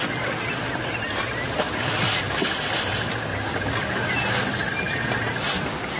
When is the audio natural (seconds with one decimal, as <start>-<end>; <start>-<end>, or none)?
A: 0.0-1.1; 2.0-3.3; 4.7-6.0